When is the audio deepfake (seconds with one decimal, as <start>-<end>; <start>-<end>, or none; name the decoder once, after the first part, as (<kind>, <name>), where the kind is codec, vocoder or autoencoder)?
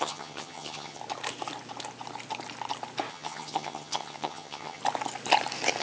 0.0-1.0 (vocoder, HiFi-GAN); 3.1-4.8